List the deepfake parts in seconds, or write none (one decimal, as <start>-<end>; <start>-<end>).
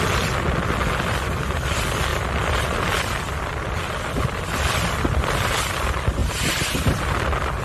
none